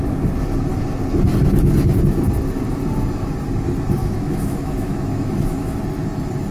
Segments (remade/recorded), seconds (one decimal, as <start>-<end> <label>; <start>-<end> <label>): 0.0-4.0 recorded; 4.0-5.8 remade; 5.8-6.5 recorded